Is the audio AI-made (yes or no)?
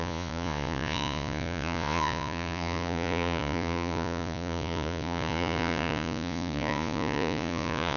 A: yes